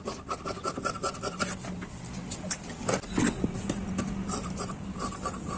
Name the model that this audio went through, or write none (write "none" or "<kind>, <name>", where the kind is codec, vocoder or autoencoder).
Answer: none